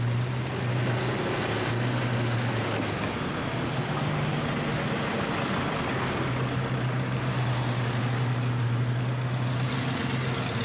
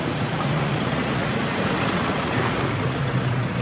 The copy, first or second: second